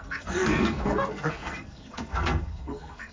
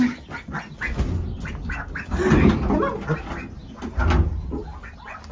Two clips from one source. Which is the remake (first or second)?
first